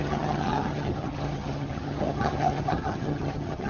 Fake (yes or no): yes